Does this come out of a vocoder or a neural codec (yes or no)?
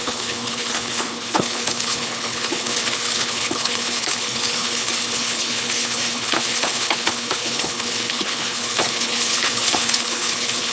yes